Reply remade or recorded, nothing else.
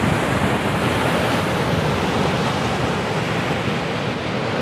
recorded